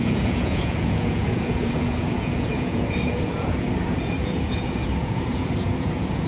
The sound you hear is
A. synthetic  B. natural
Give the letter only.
A